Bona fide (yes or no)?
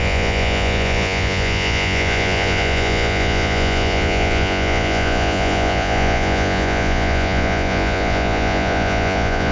no